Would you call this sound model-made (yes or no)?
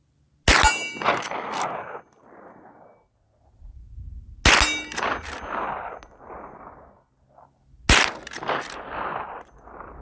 no